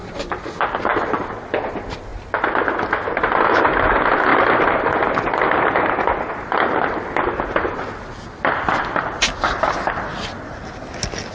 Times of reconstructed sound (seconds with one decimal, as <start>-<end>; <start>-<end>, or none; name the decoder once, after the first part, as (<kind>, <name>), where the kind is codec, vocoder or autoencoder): 0.0-1.6 (vocoder, BigVGAN v2); 4.3-6.3